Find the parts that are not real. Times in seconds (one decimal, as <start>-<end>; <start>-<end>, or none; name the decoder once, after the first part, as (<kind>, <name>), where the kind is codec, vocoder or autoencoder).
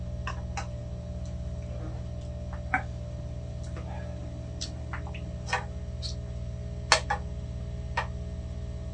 none